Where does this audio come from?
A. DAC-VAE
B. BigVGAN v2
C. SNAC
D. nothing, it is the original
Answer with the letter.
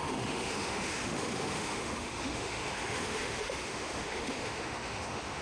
A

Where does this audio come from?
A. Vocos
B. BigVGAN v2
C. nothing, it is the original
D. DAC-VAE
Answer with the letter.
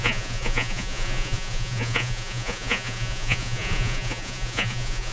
A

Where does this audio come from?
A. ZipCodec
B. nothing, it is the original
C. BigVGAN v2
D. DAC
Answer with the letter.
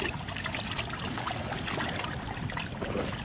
B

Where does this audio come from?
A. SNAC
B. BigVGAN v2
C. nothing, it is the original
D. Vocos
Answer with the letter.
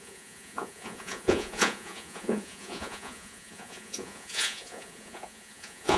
D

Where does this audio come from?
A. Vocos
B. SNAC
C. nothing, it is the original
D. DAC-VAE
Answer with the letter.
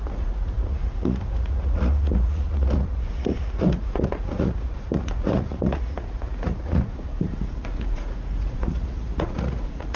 A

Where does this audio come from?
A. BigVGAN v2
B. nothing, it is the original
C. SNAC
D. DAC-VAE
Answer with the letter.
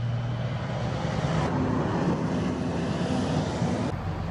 B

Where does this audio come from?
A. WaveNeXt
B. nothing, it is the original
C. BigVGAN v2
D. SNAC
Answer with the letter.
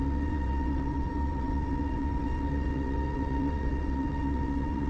A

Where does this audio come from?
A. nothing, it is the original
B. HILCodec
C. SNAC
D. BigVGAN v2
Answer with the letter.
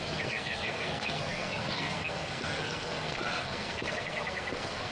C